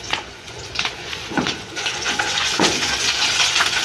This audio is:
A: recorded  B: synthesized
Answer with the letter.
B